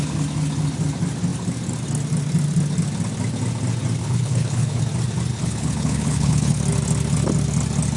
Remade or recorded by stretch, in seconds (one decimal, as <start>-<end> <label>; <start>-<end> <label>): 0.0-4.0 recorded; 4.0-4.8 remade; 4.8-5.3 recorded; 5.3-6.6 remade; 6.6-8.0 recorded